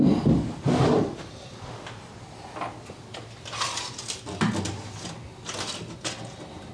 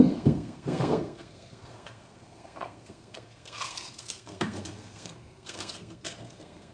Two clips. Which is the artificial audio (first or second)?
second